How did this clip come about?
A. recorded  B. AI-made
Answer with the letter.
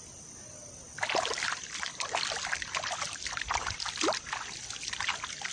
A